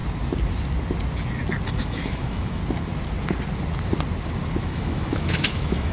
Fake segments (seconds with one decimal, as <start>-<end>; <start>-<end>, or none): 1.7-2.6; 4.6-5.9